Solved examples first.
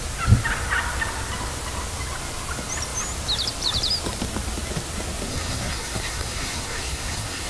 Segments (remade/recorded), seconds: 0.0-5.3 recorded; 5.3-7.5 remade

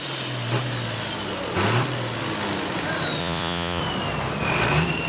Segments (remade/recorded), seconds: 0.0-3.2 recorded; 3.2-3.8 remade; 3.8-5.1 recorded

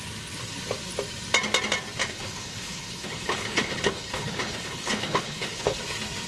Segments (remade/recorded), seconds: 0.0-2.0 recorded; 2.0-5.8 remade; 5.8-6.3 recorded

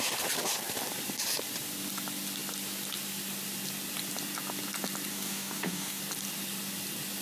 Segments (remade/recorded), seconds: 0.0-5.1 recorded; 5.1-6.0 remade; 6.0-7.2 recorded

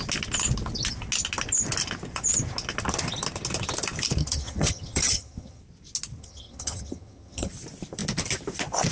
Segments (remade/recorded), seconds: 0.0-4.2 recorded; 4.2-5.6 remade; 5.6-6.2 recorded; 6.2-7.5 remade; 7.5-8.9 recorded

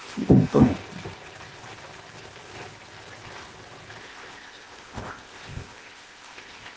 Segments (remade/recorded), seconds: 0.0-0.7 remade; 0.7-4.0 recorded; 4.0-6.8 remade